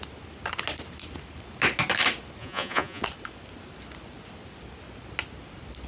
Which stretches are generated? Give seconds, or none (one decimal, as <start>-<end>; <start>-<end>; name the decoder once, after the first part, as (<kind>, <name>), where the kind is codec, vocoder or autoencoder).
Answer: 2.4-3.0 (vocoder, Vocos)